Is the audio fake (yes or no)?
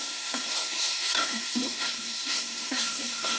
yes